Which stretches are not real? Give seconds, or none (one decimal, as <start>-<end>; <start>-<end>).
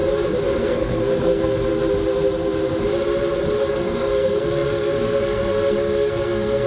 0.6-1.7; 3.7-6.7